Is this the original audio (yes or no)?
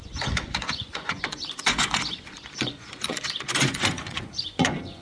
no